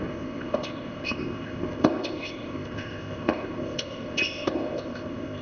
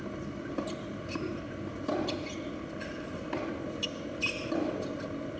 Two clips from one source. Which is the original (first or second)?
second